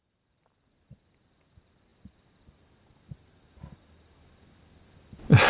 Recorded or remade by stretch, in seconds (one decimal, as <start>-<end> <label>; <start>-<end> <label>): 0.0-5.5 recorded